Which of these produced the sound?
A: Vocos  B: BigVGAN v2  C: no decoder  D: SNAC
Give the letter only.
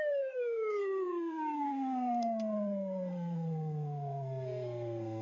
D